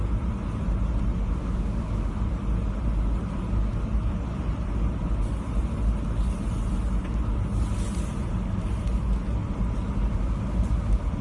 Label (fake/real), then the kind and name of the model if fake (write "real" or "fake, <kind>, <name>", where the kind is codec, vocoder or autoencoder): real